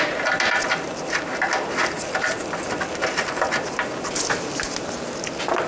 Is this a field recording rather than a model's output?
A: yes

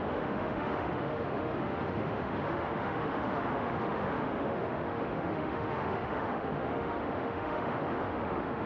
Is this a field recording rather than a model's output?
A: no